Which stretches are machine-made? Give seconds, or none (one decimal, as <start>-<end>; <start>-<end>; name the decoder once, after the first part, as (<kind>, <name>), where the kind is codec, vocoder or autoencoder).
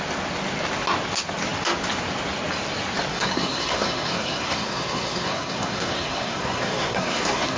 3.1-7.6 (codec, SNAC)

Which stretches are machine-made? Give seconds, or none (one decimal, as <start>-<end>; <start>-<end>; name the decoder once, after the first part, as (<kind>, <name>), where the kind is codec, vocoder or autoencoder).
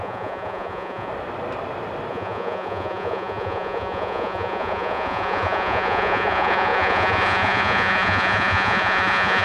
0.0-1.1 (vocoder, Vocos); 2.1-9.4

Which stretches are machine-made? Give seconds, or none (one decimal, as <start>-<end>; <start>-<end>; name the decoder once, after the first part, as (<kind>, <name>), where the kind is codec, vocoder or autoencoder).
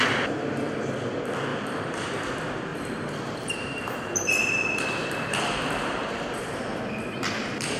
1.5-2.1 (vocoder, BigVGAN v2); 2.7-6.6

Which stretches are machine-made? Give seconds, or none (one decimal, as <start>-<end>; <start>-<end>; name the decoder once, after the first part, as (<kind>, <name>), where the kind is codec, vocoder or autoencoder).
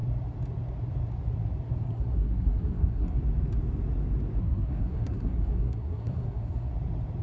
1.8-3.2 (codec, SNAC); 4.4-6.7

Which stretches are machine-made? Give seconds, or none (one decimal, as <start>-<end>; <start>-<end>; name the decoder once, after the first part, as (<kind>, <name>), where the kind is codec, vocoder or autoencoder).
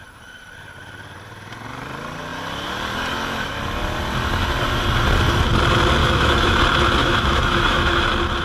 6.0-6.6 (autoencoder, DAC-VAE); 7.0-8.0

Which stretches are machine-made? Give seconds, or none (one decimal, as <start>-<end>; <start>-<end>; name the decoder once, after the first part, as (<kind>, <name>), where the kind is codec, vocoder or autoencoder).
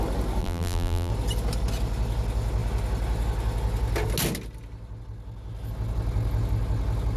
0.4-1.1 (vocoder, BigVGAN v2)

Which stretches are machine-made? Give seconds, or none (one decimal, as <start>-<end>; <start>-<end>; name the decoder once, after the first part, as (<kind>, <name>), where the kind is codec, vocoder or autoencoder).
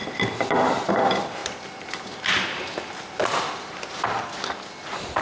0.0-0.9 (vocoder, BigVGAN v2); 1.4-4.0